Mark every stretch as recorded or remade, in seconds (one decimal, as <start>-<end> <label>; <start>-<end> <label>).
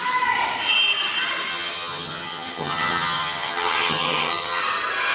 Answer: 0.0-1.5 recorded; 1.5-4.6 remade; 4.6-5.1 recorded